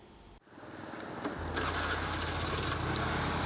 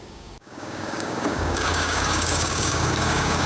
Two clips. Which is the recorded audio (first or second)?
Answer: first